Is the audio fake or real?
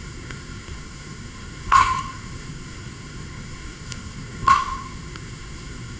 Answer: fake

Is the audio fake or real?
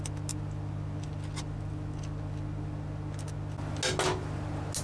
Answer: real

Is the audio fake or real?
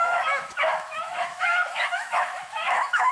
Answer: fake